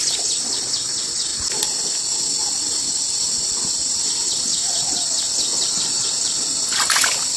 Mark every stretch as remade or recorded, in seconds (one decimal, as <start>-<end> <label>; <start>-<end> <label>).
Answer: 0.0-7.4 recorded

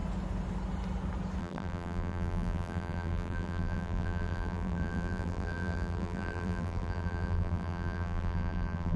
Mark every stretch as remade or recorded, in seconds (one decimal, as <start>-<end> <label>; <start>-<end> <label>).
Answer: 0.0-1.4 recorded; 1.4-9.0 remade

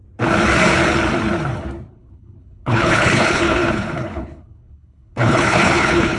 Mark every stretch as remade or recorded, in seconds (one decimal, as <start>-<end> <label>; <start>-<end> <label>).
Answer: 0.0-1.9 recorded; 1.9-6.2 remade

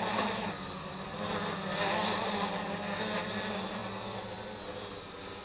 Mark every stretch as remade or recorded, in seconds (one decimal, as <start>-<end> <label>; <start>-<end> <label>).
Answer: 0.0-5.4 recorded

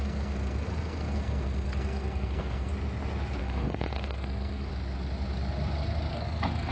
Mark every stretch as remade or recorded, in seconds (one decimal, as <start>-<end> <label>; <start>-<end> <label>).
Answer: 0.0-2.7 remade; 2.7-3.4 recorded; 3.4-4.7 remade; 4.7-6.1 recorded; 6.1-6.7 remade